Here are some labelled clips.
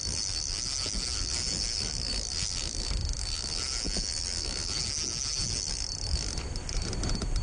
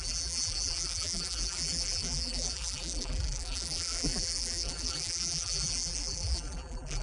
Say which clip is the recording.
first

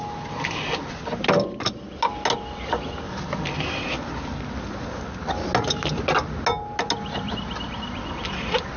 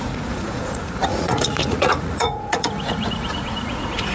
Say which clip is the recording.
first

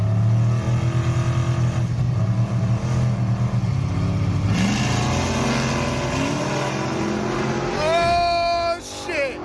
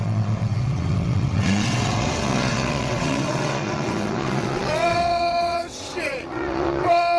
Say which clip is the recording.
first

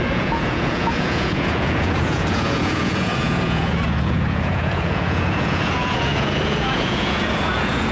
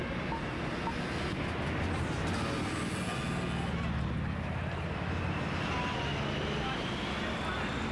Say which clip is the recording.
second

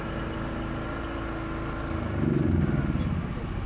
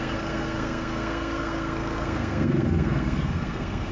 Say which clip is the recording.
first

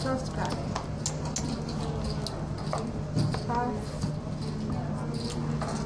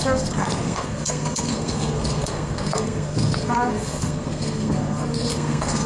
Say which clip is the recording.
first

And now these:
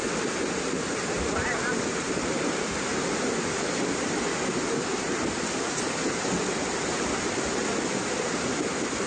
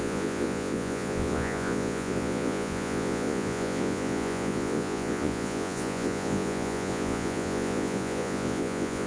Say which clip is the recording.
first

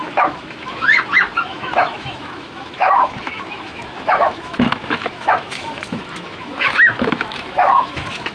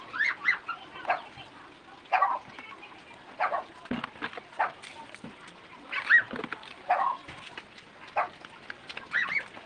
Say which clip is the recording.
second